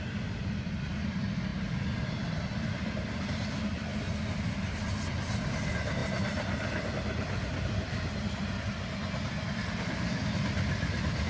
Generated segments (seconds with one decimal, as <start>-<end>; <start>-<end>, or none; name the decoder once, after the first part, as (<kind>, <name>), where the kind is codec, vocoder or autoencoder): none